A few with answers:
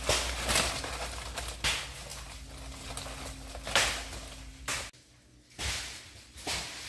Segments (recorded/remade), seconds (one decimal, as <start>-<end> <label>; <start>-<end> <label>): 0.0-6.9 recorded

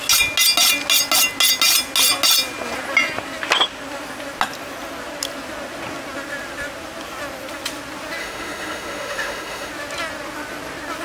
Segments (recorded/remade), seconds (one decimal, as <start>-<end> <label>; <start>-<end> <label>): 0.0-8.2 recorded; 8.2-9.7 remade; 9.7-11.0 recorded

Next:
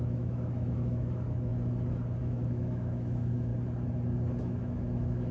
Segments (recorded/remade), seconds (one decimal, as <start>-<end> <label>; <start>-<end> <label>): 0.0-1.5 remade; 1.5-2.2 recorded; 2.2-3.5 remade; 3.5-4.4 recorded; 4.4-5.3 remade

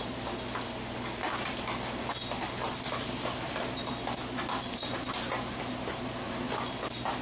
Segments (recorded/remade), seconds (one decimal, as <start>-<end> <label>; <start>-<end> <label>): 0.0-7.2 recorded

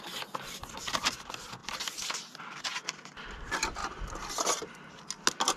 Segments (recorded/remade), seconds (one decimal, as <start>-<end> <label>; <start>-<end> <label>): 0.0-5.6 recorded

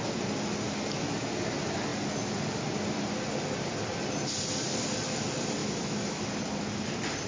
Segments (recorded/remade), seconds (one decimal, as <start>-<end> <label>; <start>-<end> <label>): 0.0-5.6 recorded; 5.6-6.3 remade; 6.3-7.3 recorded